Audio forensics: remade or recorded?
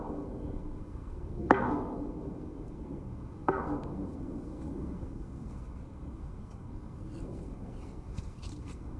remade